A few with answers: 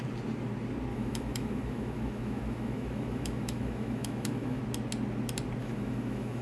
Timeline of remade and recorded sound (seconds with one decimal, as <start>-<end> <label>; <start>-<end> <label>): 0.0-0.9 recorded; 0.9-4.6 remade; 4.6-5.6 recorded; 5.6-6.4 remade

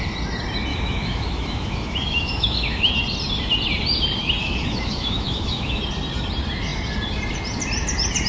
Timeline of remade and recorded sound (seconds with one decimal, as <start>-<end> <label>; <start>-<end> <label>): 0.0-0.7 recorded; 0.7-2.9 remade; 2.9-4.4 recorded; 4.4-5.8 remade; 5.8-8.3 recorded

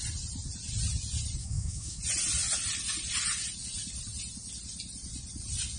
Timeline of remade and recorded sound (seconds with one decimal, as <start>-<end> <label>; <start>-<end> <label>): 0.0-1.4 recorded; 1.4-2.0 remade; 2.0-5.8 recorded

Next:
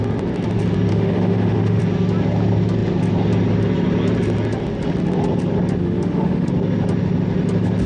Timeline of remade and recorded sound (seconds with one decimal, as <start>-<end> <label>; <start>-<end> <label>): 0.0-0.9 recorded; 0.9-1.8 remade; 1.8-5.8 recorded; 5.8-6.5 remade; 6.5-7.9 recorded

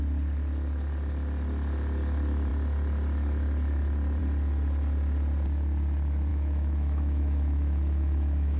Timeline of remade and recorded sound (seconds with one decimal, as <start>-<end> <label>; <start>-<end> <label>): 0.0-6.3 recorded; 6.3-8.6 remade

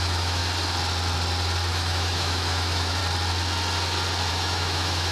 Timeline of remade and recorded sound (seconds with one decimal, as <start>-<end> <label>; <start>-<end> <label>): 0.0-0.4 remade; 0.4-1.7 recorded; 1.7-3.0 remade; 3.0-4.3 recorded; 4.3-5.1 remade

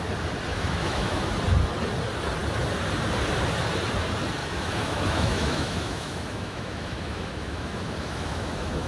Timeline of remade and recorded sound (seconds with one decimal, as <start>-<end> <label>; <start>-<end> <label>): 0.0-0.5 recorded; 0.5-1.3 remade; 1.3-4.4 recorded; 4.4-8.9 remade

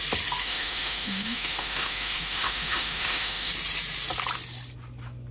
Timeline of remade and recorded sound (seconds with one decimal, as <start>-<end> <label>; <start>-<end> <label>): 0.0-0.4 recorded; 0.4-3.5 remade; 3.5-5.3 recorded